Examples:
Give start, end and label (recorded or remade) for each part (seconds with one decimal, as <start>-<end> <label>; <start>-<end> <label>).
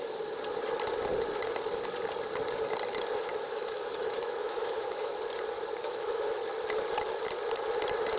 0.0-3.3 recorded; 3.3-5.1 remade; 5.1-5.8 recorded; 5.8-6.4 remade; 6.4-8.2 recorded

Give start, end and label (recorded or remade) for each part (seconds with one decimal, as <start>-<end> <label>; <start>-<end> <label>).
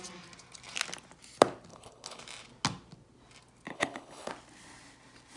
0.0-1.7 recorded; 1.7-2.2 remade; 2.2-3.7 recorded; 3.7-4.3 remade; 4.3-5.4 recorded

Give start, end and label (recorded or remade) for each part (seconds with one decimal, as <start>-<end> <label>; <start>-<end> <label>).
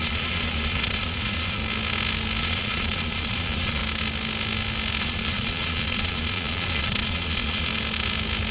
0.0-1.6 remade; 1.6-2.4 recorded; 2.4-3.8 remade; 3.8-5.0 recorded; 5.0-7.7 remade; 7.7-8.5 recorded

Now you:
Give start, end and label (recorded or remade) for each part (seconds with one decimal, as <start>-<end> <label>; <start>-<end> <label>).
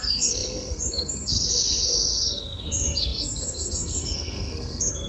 0.0-5.1 remade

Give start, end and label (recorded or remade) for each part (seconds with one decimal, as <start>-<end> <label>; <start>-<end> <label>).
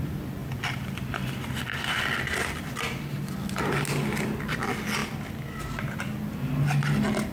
0.0-0.4 recorded; 0.4-3.7 remade; 3.7-7.3 recorded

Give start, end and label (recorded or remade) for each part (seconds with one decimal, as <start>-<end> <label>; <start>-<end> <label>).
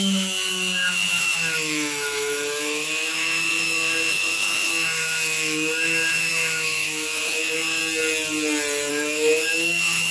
0.0-7.8 remade; 7.8-8.9 recorded; 8.9-10.1 remade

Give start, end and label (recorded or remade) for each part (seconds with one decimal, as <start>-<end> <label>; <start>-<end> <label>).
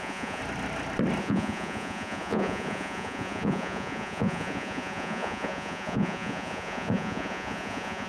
0.0-0.4 remade; 0.4-1.2 recorded; 1.2-8.1 remade